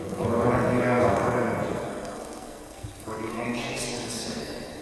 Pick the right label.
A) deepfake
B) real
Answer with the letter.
A